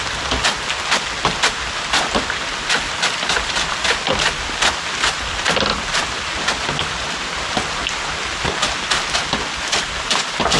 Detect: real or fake real